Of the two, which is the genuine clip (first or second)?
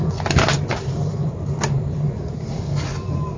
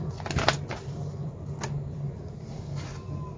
second